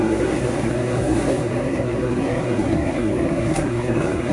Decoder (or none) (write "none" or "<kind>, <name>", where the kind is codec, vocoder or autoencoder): codec, SNAC